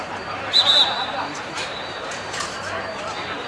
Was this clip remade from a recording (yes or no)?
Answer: yes